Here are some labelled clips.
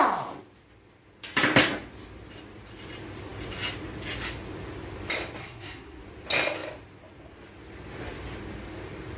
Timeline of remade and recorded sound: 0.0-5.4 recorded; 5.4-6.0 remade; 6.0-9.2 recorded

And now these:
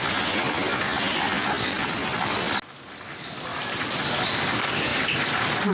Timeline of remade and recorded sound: 0.0-1.4 recorded; 1.4-2.5 remade; 2.5-3.5 recorded; 3.5-4.1 remade; 4.1-4.9 recorded; 4.9-5.7 remade

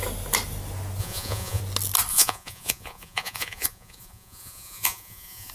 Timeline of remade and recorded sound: 0.0-1.0 recorded; 1.0-1.6 remade; 1.6-2.1 recorded; 2.1-5.5 remade

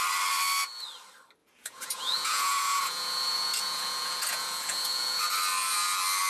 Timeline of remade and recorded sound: 0.0-1.4 recorded; 1.4-5.2 remade; 5.2-6.3 recorded

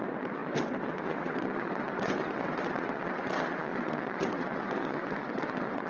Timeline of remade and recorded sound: 0.0-5.9 remade

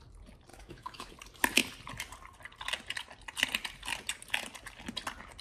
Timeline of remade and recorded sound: 0.0-0.5 recorded; 0.5-1.1 remade; 1.1-5.4 recorded

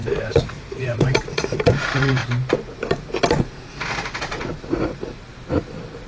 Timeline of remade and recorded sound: 0.0-2.2 remade; 2.2-3.4 recorded; 3.4-5.2 remade; 5.2-6.1 recorded

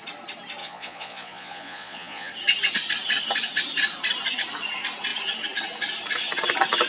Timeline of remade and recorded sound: 0.0-0.6 recorded; 0.6-2.3 remade; 2.3-6.9 recorded